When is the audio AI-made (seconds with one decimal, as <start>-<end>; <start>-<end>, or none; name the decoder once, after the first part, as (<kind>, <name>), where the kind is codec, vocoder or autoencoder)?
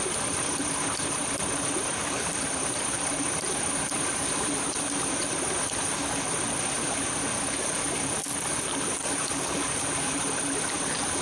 2.0-6.0 (vocoder, BigVGAN v2)